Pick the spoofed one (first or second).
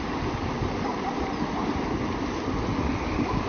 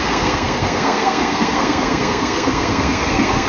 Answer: second